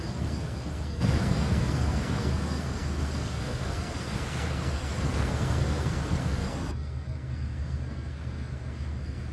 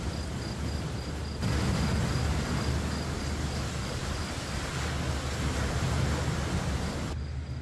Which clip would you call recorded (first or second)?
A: second